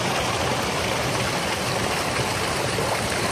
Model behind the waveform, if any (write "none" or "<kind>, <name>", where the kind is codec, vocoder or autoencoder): none